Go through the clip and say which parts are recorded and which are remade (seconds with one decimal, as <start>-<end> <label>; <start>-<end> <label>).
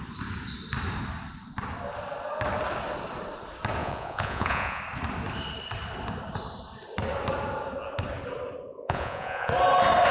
0.0-3.8 recorded; 3.8-4.8 remade; 4.8-8.7 recorded; 8.7-9.5 remade; 9.5-10.1 recorded